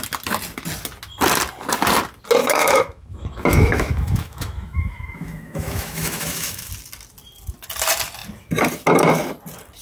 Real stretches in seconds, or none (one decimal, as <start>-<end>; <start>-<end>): 0.0-2.4; 6.7-9.8